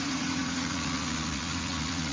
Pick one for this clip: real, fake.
fake